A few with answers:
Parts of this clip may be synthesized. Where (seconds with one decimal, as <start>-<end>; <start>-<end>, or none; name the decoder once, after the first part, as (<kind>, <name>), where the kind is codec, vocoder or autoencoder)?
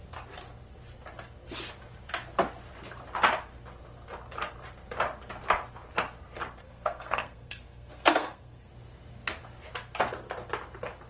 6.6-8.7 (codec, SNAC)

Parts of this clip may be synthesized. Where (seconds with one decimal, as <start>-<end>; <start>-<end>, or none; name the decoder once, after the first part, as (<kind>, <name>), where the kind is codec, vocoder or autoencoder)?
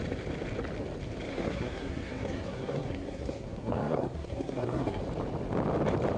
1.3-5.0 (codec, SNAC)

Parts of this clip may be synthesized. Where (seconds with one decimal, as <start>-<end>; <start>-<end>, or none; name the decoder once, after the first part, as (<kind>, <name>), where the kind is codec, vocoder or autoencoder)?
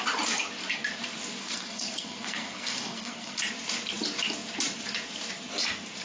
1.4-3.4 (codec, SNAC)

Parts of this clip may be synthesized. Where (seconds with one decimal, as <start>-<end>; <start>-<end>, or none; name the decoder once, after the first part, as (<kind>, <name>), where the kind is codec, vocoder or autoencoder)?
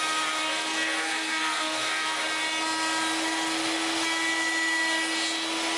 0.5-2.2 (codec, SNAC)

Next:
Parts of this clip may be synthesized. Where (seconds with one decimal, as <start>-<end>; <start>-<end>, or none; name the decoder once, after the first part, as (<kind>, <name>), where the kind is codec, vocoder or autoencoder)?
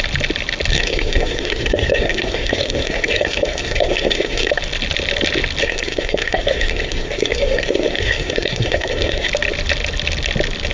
0.7-4.5 (codec, SNAC); 5.6-9.3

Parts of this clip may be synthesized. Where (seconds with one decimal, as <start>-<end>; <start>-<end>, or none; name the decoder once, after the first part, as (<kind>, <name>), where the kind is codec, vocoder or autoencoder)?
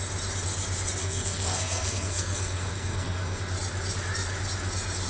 1.0-3.4 (codec, SNAC)